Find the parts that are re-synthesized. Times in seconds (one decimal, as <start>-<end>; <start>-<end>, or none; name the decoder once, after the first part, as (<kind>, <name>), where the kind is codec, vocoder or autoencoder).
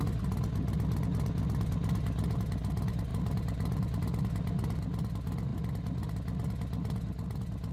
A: none